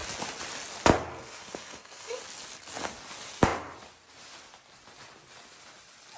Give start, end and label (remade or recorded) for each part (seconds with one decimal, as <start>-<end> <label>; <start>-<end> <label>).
0.0-1.1 recorded; 1.1-2.2 remade; 2.2-6.2 recorded